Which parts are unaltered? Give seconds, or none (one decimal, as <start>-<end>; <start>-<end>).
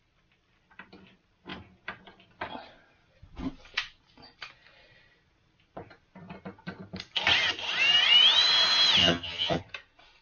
0.0-9.0; 9.6-10.2